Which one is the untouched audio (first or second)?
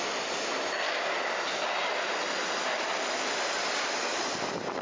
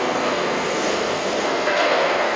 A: first